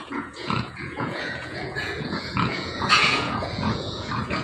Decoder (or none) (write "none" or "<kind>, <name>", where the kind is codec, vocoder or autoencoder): vocoder, Vocos